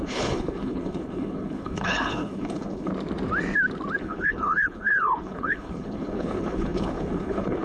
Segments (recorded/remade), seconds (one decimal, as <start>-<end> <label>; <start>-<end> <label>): 0.0-2.9 remade; 2.9-4.0 recorded; 4.0-7.6 remade